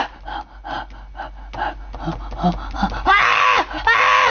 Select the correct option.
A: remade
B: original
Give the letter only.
B